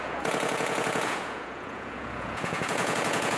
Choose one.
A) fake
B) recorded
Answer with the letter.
A